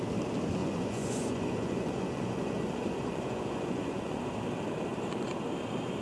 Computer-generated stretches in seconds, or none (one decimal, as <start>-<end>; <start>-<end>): 0.6-4.2